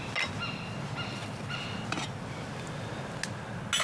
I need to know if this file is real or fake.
real